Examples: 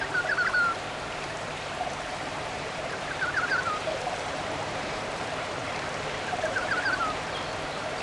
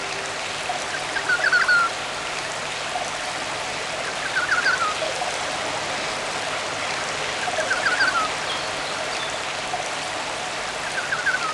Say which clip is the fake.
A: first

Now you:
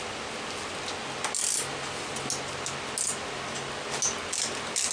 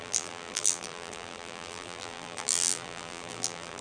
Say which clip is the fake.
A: second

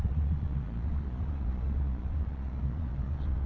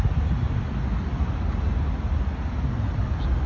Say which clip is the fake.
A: first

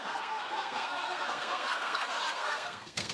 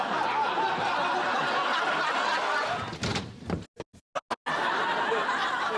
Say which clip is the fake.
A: first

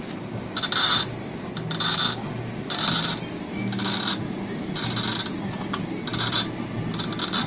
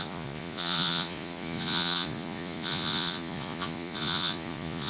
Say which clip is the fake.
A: second